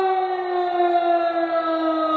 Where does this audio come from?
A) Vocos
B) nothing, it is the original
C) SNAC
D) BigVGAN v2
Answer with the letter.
B